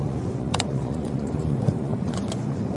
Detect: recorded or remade remade